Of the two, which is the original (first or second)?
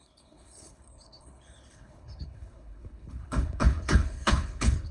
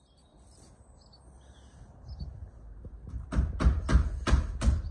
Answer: second